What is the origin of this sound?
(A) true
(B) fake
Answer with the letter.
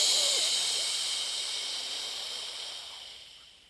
B